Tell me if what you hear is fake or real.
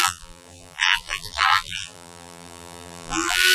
fake